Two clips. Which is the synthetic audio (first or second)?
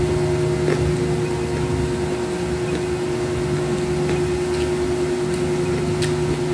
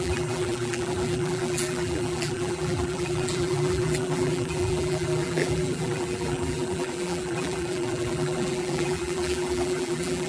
second